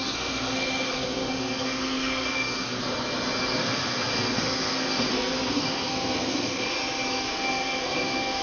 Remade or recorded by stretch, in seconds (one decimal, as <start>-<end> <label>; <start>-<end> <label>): 0.0-2.8 remade; 2.8-3.6 recorded; 3.6-6.8 remade; 6.8-7.3 recorded; 7.3-8.4 remade